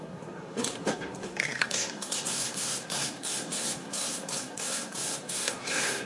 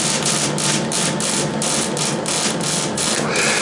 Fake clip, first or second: first